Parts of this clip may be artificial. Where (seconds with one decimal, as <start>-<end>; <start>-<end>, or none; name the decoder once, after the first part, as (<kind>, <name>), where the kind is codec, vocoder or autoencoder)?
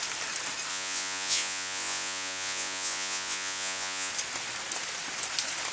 0.7-4.1 (vocoder, Vocos)